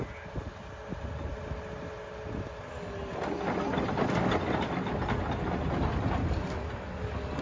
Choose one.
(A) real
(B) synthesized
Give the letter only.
A